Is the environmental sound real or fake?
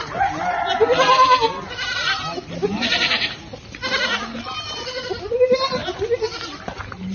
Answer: real